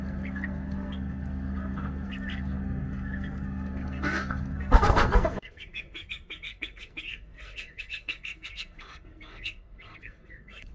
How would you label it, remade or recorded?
remade